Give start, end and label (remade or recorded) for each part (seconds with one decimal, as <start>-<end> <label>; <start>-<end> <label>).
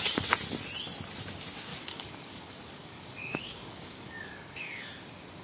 0.0-1.7 recorded; 1.7-4.9 remade; 4.9-5.4 recorded